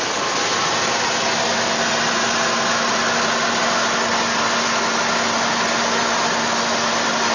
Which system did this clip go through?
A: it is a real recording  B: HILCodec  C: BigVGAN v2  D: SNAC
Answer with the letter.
A